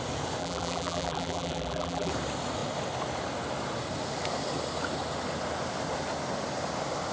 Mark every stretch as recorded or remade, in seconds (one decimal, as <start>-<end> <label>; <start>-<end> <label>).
0.0-0.4 recorded; 0.4-2.1 remade; 2.1-7.1 recorded